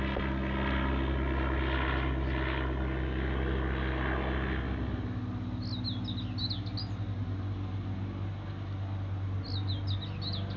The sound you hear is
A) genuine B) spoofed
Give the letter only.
A